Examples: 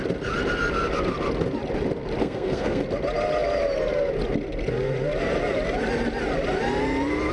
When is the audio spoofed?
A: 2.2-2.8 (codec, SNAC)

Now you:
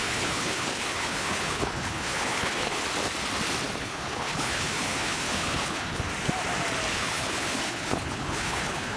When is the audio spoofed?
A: 0.0-2.8 (codec, HILCodec); 3.8-6.1; 6.9-9.0

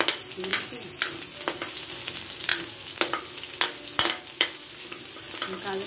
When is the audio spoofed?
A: none

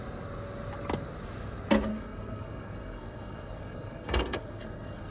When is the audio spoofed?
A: 1.9-5.1 (codec, SNAC)

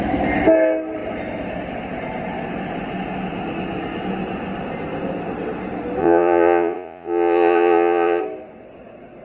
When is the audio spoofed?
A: 6.0-8.2 (vocoder, Vocos)

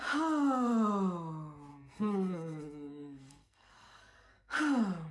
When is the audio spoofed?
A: 1.7-4.6 (codec, SNAC)

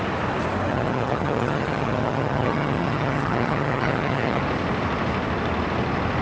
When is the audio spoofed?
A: 0.7-4.4 (vocoder, HiFi-GAN)